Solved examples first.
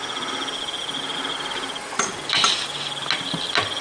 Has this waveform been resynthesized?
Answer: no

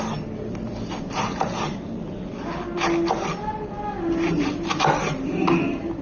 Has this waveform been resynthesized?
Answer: no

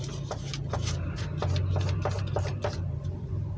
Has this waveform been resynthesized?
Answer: no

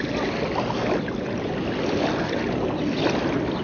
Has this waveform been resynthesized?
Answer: no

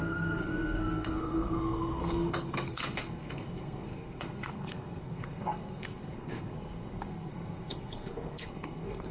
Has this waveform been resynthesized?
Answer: yes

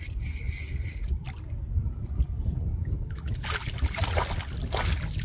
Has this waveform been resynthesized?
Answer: no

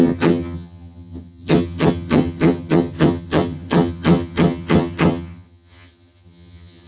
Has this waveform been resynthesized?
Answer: yes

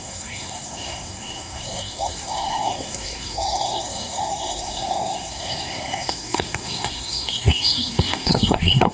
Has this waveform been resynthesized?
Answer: yes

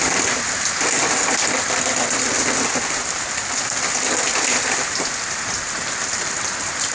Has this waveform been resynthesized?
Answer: no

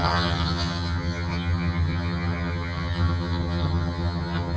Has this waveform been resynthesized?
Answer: yes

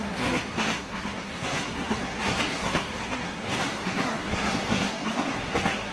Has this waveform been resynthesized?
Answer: yes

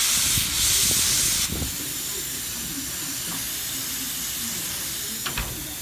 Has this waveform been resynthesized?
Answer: no